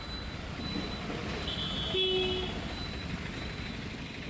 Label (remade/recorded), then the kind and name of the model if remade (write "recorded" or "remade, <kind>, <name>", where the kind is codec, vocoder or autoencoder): recorded